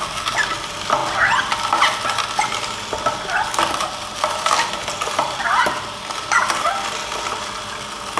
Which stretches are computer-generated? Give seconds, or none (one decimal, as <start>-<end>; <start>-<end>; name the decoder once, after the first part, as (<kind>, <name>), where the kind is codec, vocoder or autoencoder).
none

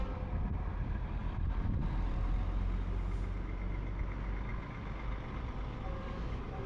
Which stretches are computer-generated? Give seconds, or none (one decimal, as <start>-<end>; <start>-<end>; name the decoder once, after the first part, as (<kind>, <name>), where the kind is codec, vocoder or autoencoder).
1.2-2.3 (vocoder, BigVGAN v2); 4.5-6.7

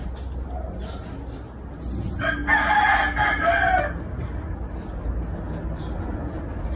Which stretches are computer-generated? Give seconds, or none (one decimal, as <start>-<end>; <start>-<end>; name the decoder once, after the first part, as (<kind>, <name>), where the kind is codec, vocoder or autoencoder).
none